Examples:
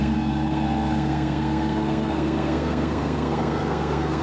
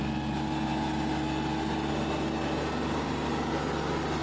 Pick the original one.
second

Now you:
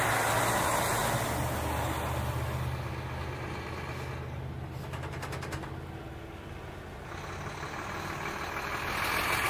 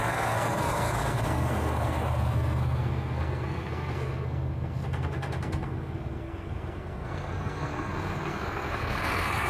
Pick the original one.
first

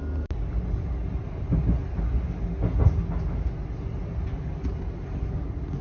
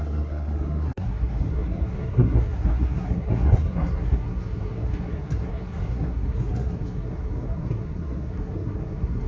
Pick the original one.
first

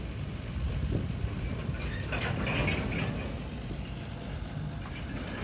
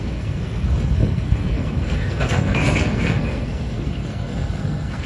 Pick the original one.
first